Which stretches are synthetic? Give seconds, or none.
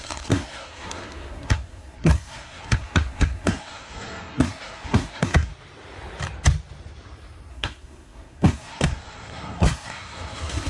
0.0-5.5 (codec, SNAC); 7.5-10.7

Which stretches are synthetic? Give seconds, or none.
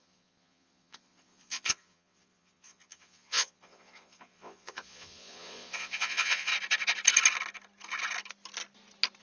0.0-6.5 (vocoder, Vocos)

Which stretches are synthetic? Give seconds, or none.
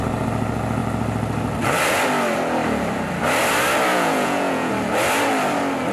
3.9-4.7 (vocoder, Vocos)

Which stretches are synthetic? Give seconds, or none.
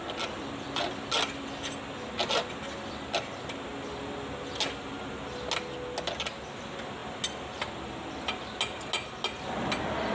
none